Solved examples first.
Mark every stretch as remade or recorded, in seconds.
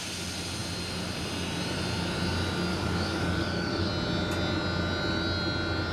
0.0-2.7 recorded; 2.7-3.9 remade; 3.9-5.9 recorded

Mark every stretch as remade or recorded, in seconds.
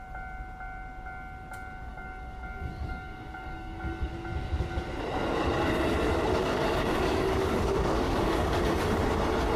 0.0-1.9 recorded; 1.9-4.1 remade; 4.1-6.4 recorded; 6.4-8.6 remade; 8.6-9.6 recorded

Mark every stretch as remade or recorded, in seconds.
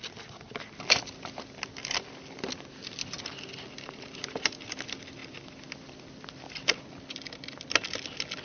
0.0-8.4 recorded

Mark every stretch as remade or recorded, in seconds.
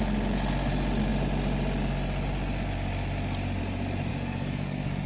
0.0-4.1 recorded; 4.1-5.1 remade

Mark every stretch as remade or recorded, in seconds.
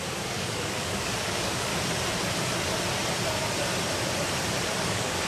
0.0-1.7 remade; 1.7-4.7 recorded; 4.7-5.3 remade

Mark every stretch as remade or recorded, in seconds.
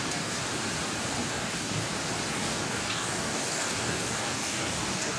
0.0-0.4 remade; 0.4-1.3 recorded; 1.3-1.8 remade; 1.8-2.3 recorded; 2.3-5.2 remade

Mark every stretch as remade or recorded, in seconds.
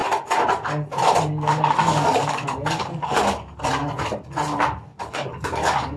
0.0-1.5 recorded; 1.5-3.7 remade; 3.7-4.9 recorded; 4.9-6.0 remade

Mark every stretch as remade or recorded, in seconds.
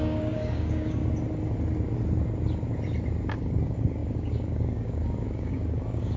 0.0-1.0 remade; 1.0-3.3 recorded; 3.3-6.2 remade